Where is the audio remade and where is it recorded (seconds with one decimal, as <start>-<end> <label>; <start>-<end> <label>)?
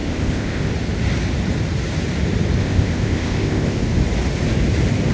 0.0-0.7 remade; 0.7-2.6 recorded; 2.6-3.8 remade; 3.8-5.1 recorded